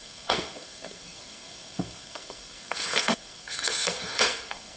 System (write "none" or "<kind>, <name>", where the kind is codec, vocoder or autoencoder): codec, SNAC